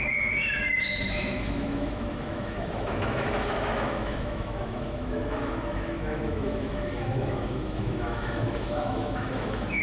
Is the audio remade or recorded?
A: remade